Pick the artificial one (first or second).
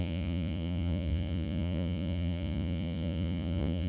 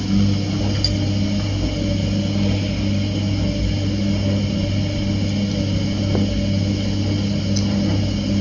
first